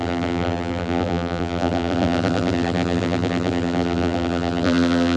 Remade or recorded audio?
remade